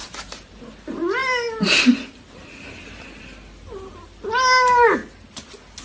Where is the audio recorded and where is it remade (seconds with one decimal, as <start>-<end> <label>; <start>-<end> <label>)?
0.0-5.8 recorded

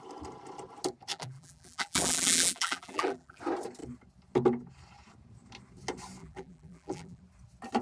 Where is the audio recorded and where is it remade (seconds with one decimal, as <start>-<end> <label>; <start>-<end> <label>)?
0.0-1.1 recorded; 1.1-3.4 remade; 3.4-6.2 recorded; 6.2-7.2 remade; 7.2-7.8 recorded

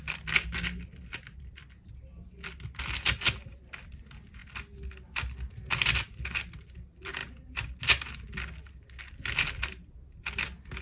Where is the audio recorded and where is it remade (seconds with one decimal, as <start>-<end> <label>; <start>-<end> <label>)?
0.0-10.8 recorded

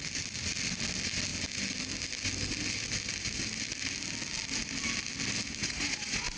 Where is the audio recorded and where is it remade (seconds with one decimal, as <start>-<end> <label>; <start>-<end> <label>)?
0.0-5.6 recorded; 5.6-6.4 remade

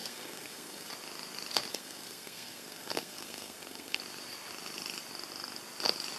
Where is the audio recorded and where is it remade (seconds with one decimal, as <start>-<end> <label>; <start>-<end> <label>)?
0.0-0.9 remade; 0.9-1.7 recorded; 1.7-4.0 remade; 4.0-6.2 recorded

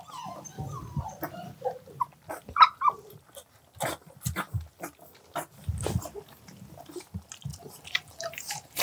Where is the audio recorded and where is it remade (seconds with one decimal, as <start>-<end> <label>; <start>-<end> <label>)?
0.0-7.5 recorded; 7.5-8.8 remade